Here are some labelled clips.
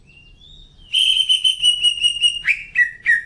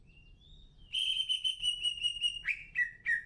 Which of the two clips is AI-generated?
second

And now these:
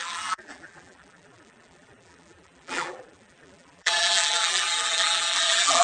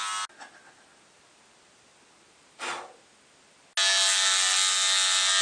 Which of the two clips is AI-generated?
first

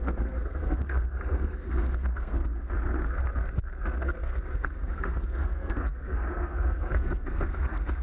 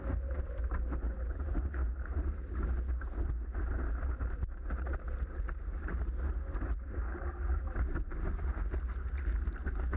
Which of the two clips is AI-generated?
first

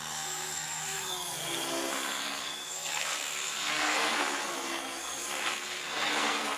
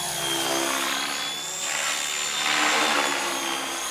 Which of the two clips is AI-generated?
first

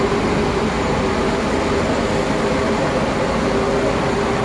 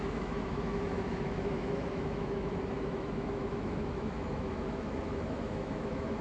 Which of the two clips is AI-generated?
second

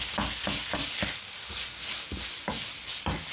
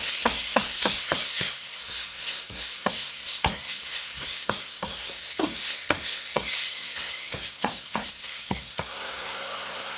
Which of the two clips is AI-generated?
second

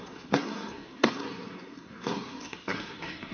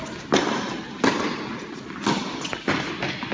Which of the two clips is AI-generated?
first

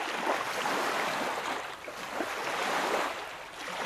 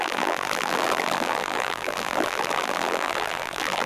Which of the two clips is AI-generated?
second